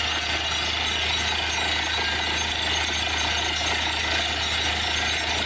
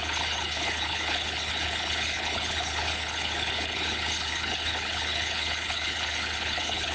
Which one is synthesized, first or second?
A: second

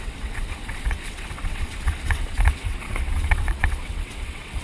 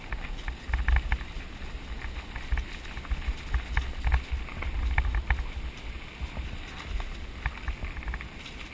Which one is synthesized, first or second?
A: first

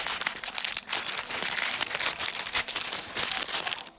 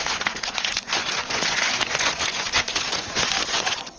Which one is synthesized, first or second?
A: second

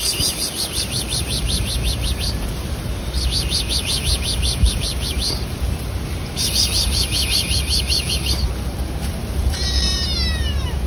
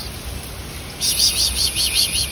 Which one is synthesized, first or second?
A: first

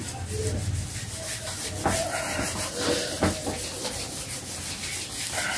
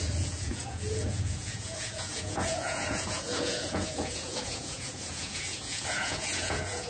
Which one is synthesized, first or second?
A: second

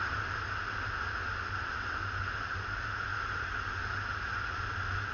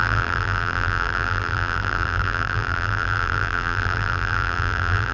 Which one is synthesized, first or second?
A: second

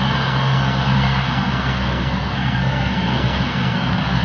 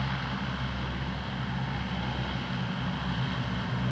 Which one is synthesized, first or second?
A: first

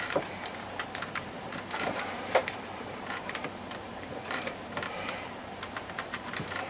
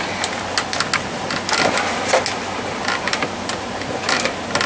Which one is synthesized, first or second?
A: first